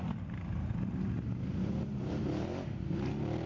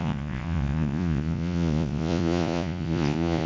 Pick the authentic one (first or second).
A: first